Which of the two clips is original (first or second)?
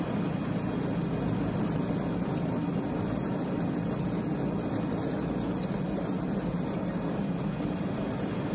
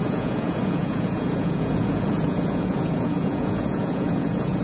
first